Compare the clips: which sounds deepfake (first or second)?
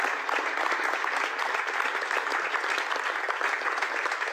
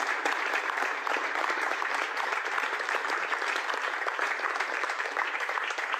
second